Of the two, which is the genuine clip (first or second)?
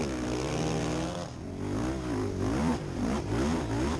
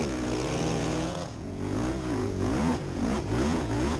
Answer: first